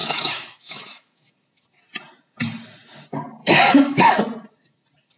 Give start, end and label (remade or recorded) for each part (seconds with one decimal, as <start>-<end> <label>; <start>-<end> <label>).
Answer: 0.0-1.3 remade; 1.3-3.4 recorded; 3.4-4.2 remade; 4.2-5.2 recorded